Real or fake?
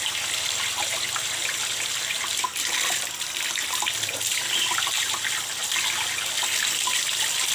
real